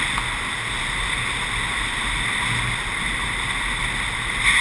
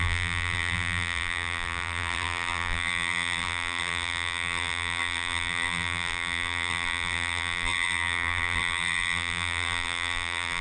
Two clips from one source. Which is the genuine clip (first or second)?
first